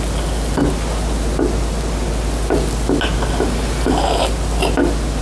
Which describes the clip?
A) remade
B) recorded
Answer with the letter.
B